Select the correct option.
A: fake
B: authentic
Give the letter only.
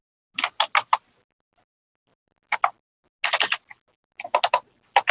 B